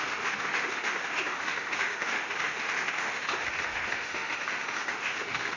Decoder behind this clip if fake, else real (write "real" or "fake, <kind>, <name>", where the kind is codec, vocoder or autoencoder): fake, autoencoder, DAC-VAE